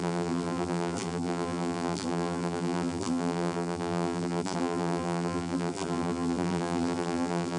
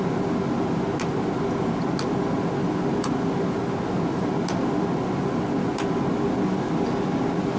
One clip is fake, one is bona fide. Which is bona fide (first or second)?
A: second